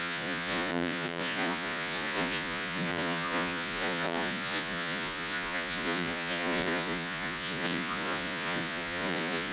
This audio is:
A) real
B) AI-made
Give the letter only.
B